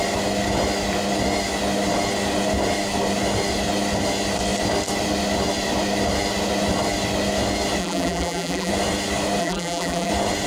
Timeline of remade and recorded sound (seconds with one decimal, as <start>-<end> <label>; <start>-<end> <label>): 0.0-7.8 recorded; 7.8-8.7 remade; 8.7-9.4 recorded; 9.4-10.1 remade; 10.1-10.5 recorded